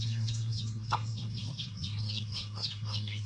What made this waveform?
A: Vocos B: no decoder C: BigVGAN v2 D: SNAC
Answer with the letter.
D